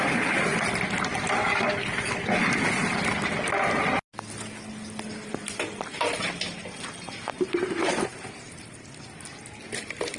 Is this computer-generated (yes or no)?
no